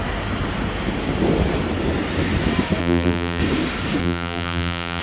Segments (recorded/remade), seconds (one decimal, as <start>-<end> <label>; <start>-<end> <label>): 0.0-2.8 recorded; 2.8-3.4 remade; 3.4-4.0 recorded; 4.0-5.0 remade